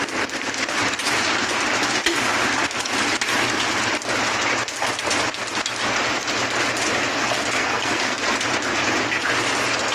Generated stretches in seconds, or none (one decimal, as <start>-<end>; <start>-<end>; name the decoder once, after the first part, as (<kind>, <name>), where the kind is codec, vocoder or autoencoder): 7.1-8.2 (codec, SNAC)